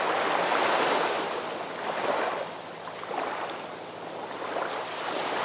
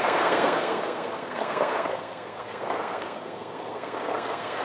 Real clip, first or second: first